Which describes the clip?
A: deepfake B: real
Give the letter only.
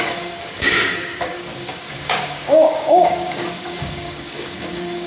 A